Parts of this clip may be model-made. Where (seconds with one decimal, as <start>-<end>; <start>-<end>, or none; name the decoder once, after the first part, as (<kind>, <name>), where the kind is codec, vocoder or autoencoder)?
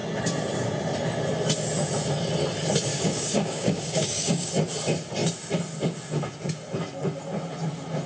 2.9-4.5 (codec, DAC)